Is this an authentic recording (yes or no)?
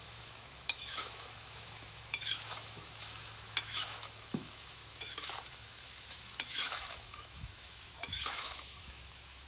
no